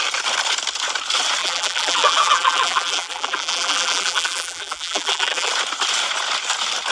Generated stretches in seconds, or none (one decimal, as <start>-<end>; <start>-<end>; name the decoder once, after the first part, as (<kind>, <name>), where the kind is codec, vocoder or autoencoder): 1.4-5.5 (vocoder, BigVGAN v2)